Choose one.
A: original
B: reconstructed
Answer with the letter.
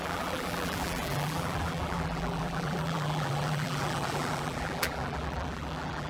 B